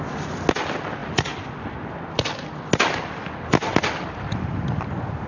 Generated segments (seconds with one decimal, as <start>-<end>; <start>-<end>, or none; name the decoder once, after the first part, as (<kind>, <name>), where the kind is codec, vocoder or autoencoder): none

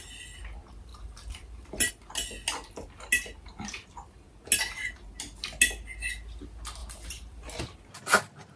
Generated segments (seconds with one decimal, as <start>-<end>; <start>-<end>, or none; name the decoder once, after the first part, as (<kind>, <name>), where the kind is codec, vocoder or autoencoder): 0.9-1.9 (vocoder, BigVGAN v2); 6.8-7.6

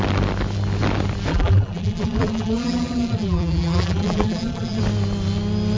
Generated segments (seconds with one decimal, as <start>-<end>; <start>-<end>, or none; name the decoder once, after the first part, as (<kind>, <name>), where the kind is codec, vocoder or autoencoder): 1.3-4.8 (vocoder, BigVGAN v2)

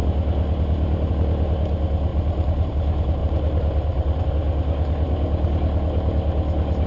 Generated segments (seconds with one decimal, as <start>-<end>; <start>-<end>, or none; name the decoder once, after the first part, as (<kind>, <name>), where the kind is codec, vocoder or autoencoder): 2.1-2.7 (vocoder, BigVGAN v2); 3.2-4.3

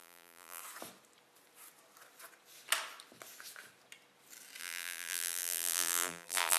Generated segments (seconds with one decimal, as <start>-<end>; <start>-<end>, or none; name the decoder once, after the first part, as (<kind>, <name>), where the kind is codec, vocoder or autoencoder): 0.0-0.6 (vocoder, BigVGAN v2); 4.6-6.6

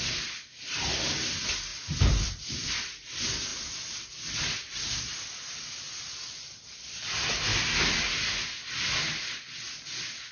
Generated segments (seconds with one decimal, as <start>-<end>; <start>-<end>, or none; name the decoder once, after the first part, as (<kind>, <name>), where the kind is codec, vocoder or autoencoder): 1.7-2.7 (vocoder, BigVGAN v2)

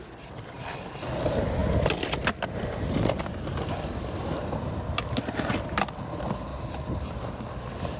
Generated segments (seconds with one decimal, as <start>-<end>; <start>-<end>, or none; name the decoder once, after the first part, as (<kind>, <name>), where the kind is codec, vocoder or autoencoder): 6.5-7.1 (vocoder, BigVGAN v2)

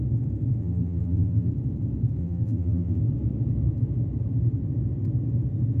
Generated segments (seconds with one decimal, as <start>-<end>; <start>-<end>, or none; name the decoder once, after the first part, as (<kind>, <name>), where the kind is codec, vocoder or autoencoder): 0.6-1.5 (vocoder, BigVGAN v2); 2.2-3.0